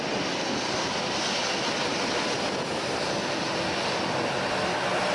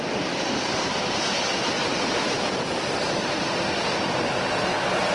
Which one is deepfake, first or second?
second